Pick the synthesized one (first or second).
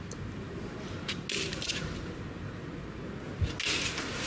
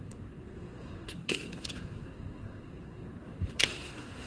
second